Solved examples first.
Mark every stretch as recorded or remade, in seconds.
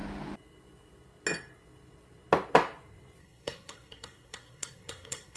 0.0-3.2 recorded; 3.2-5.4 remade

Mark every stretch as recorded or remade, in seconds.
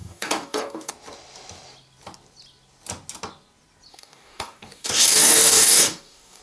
0.0-0.9 remade; 0.9-3.9 recorded; 3.9-6.4 remade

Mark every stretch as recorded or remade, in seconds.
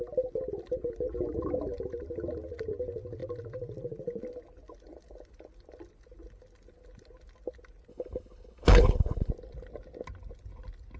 0.0-7.9 recorded; 7.9-9.3 remade; 9.3-11.0 recorded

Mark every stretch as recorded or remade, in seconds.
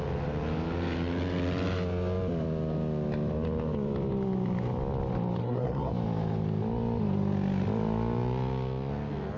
0.0-5.4 recorded; 5.4-5.9 remade; 5.9-9.4 recorded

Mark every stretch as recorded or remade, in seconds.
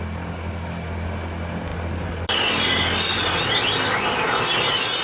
0.0-5.0 recorded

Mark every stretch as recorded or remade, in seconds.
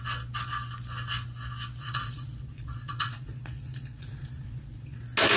0.0-1.8 recorded; 1.8-5.0 remade; 5.0-5.4 recorded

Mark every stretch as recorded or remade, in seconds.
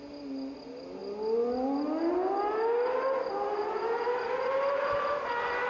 0.0-5.7 recorded